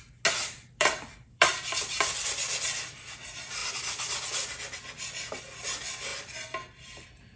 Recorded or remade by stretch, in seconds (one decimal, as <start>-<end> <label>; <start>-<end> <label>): 0.0-0.4 recorded; 0.4-1.5 remade; 1.5-6.1 recorded; 6.1-7.4 remade